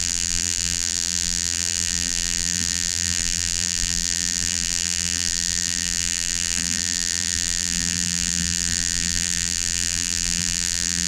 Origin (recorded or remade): remade